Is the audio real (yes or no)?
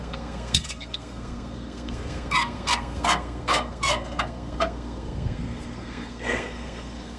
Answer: no